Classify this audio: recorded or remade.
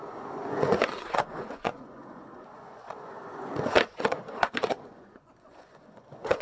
remade